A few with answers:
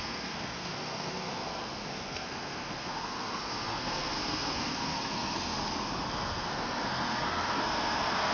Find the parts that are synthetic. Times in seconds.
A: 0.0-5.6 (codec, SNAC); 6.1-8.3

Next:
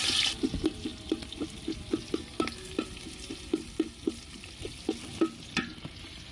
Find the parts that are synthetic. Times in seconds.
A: none

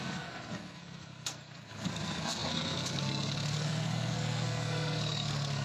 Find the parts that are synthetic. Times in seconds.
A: 0.0-5.6 (codec, SNAC)

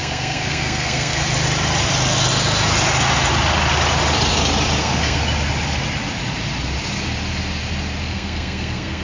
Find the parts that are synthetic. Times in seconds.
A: 0.0-1.2 (codec, SNAC); 4.8-5.2; 8.0-9.0

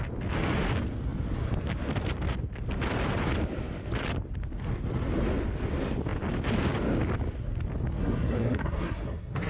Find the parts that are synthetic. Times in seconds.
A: 8.0-9.5 (codec, SNAC)